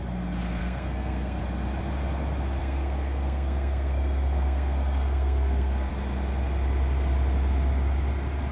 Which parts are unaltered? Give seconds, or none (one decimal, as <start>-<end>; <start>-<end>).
0.0-0.6; 1.4-2.6; 5.9-8.5